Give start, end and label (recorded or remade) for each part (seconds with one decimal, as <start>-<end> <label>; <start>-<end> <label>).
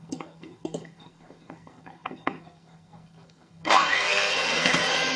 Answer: 0.0-5.2 remade